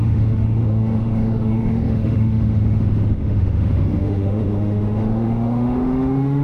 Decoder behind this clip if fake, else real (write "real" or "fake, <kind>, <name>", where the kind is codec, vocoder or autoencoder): fake, autoencoder, DAC-VAE